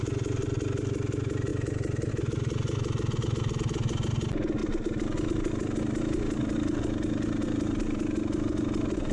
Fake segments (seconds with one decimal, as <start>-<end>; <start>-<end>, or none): none